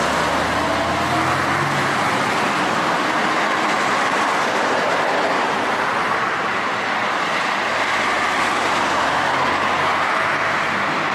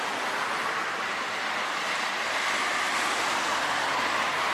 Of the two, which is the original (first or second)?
first